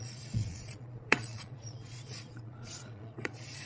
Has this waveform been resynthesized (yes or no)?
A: yes